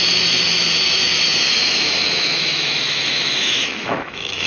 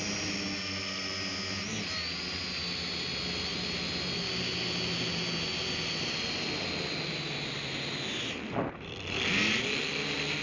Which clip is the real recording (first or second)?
second